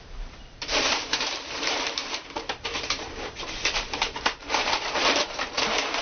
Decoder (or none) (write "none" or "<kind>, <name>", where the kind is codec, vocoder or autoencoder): vocoder, BigVGAN v2